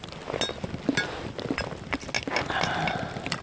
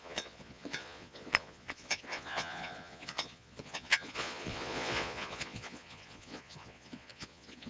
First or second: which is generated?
second